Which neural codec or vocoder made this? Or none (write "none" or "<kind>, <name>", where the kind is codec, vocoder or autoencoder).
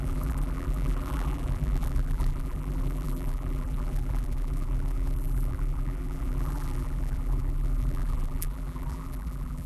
vocoder, BigVGAN v2